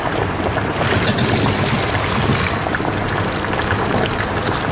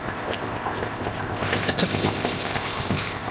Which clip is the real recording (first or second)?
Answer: first